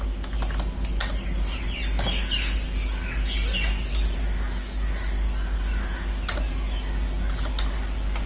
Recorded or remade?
recorded